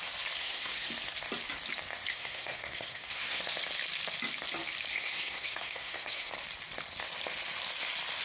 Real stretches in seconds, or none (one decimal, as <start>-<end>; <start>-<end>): 0.0-0.4; 0.9-2.1; 3.4-4.9; 6.3-8.2